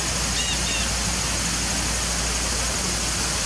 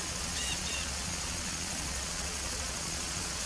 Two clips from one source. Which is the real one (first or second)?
first